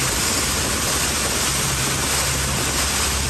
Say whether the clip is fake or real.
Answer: real